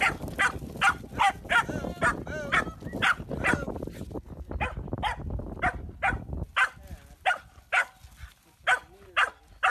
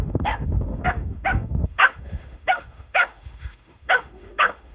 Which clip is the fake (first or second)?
second